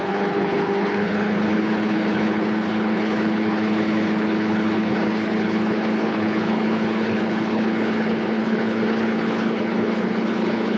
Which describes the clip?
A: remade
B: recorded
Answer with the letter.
A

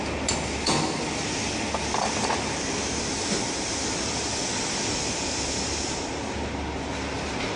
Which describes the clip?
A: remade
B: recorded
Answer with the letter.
B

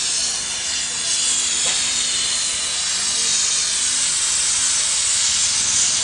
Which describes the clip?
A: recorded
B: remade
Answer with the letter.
A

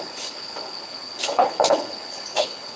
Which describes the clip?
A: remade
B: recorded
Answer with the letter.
A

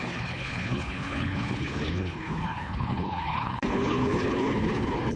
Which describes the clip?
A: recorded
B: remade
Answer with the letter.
B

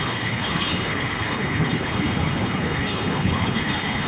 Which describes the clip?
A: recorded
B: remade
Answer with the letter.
B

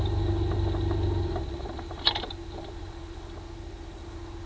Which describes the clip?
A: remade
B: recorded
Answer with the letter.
B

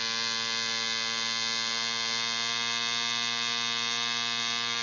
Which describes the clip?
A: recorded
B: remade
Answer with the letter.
A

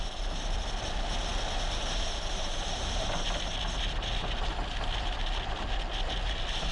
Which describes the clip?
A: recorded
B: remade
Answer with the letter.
A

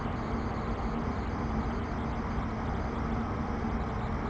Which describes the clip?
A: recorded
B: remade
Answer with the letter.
A